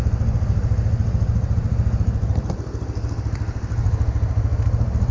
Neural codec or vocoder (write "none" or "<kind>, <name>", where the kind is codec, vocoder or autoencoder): none